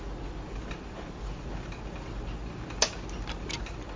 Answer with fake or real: real